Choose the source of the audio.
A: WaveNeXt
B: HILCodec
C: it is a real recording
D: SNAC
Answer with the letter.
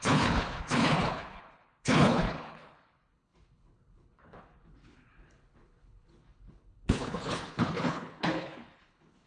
B